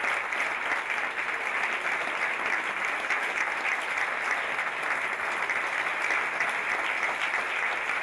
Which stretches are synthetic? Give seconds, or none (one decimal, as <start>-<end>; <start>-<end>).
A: none